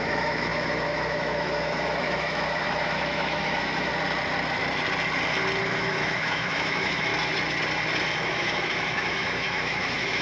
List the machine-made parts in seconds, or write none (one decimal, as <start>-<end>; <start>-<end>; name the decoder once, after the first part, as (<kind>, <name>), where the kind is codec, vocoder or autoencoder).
0.0-3.9 (autoencoder, DAC-VAE); 5.6-7.1; 8.2-10.2